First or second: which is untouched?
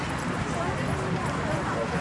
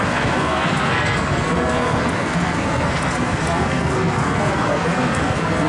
first